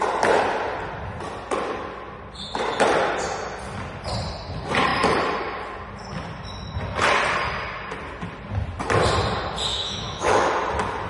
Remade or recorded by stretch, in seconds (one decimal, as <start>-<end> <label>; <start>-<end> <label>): 0.0-9.7 recorded; 9.7-10.5 remade; 10.5-11.1 recorded